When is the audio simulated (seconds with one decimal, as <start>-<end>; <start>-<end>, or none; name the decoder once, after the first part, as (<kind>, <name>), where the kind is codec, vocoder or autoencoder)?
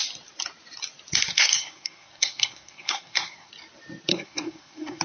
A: 1.3-3.5 (codec, SNAC); 4.1-5.0